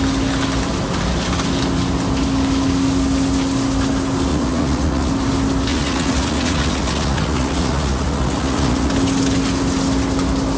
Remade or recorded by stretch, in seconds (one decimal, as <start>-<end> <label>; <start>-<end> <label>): 0.0-4.3 recorded; 4.3-5.1 remade; 5.1-5.7 recorded; 5.7-8.9 remade; 8.9-10.6 recorded

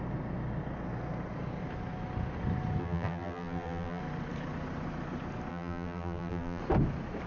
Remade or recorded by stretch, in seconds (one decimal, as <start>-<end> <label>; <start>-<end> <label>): 0.0-2.8 recorded; 2.8-4.0 remade; 4.0-5.5 recorded; 5.5-6.6 remade; 6.6-7.3 recorded

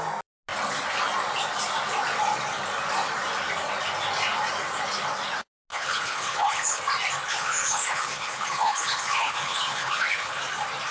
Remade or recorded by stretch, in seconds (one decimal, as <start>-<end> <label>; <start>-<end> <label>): 0.0-5.7 recorded; 5.7-6.8 remade; 6.8-7.3 recorded; 7.3-10.4 remade; 10.4-10.9 recorded

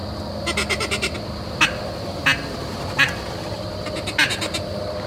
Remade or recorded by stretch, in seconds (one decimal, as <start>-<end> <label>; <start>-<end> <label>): 0.0-5.1 recorded